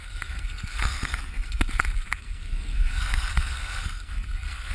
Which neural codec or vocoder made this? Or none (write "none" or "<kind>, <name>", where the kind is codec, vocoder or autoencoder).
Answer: codec, SNAC